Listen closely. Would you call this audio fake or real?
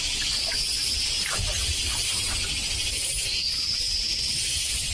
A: real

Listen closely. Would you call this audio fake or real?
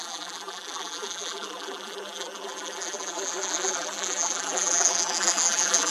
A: fake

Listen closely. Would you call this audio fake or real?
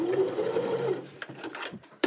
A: fake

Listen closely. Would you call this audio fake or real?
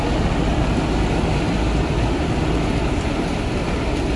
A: real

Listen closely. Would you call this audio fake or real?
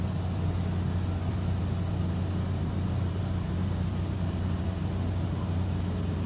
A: real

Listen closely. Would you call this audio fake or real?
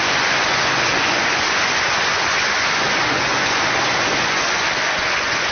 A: fake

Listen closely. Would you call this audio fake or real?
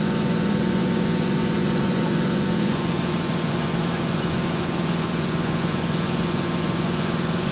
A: fake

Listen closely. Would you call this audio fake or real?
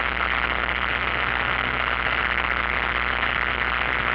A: real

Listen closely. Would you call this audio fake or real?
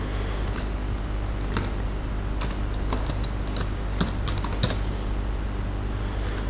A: real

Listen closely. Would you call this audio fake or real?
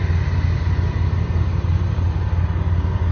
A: real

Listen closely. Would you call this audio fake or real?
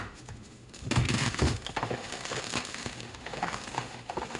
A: fake